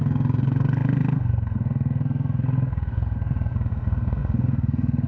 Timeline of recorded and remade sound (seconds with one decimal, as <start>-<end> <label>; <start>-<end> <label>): 0.0-5.1 remade